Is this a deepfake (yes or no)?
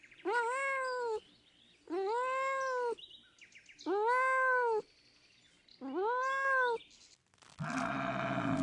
no